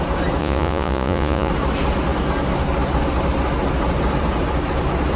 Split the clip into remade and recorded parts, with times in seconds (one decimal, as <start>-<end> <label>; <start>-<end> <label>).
0.0-0.4 recorded; 0.4-1.5 remade; 1.5-5.2 recorded